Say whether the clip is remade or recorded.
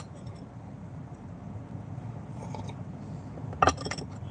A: recorded